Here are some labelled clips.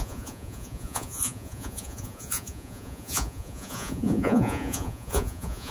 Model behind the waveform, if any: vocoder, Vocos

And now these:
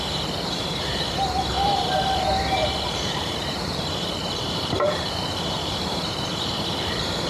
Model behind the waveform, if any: vocoder, BigVGAN v2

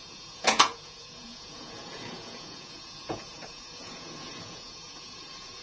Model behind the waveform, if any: vocoder, Vocos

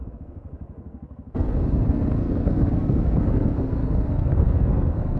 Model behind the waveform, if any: codec, SNAC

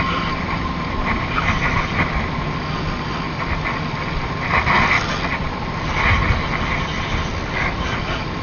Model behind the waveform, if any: none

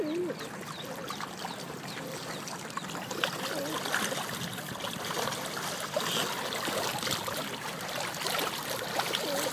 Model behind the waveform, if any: none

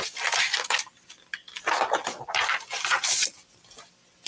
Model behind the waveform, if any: none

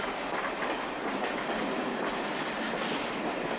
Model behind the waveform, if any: none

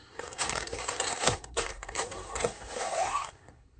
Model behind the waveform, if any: codec, SNAC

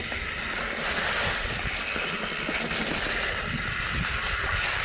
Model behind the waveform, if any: none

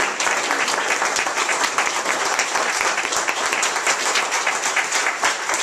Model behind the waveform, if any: vocoder, BigVGAN v2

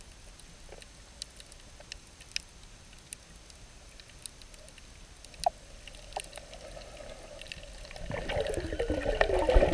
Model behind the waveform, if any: none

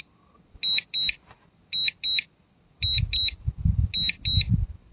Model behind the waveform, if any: none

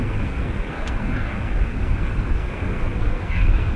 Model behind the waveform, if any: codec, SNAC